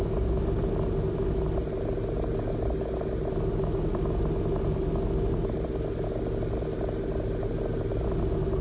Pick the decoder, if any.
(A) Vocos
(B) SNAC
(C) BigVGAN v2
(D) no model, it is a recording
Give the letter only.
D